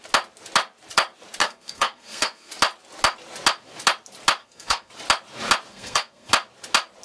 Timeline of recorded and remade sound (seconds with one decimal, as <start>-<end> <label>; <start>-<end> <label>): 0.0-1.4 recorded; 1.4-2.5 remade; 2.5-4.4 recorded; 4.4-4.9 remade; 4.9-5.7 recorded; 5.7-6.3 remade; 6.3-7.0 recorded

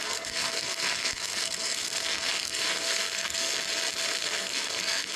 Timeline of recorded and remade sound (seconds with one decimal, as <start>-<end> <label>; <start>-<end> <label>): 0.0-3.5 remade; 3.5-4.2 recorded; 4.2-5.2 remade

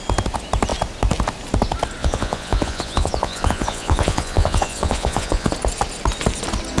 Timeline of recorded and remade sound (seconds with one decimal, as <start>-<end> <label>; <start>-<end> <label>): 0.0-2.0 recorded; 2.0-5.5 remade; 5.5-6.8 recorded